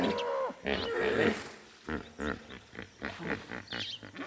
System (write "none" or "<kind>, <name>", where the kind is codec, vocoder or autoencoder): none